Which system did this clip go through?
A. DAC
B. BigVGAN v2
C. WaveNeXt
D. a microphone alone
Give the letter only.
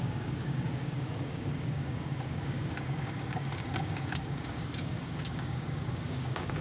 A